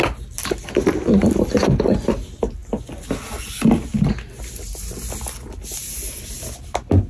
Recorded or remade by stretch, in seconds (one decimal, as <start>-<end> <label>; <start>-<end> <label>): 0.0-7.1 recorded